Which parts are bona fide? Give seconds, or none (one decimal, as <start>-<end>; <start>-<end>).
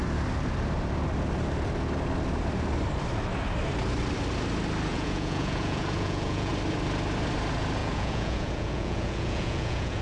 0.0-4.9; 6.5-7.8